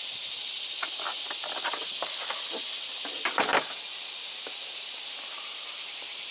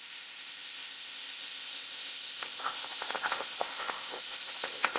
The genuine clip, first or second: first